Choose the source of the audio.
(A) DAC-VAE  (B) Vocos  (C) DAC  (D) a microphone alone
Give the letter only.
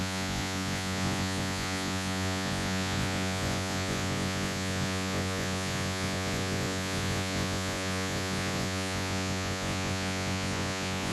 B